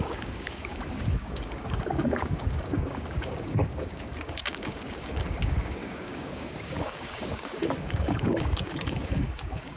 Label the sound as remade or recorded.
remade